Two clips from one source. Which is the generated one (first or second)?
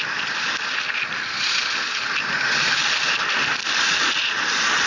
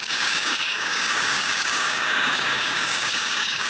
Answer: second